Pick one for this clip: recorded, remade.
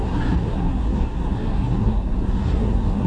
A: remade